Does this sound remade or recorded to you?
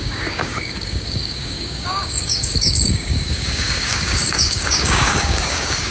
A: remade